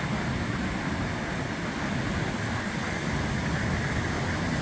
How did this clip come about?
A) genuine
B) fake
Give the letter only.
A